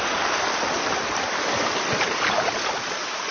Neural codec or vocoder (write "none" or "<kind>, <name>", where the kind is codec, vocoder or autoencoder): none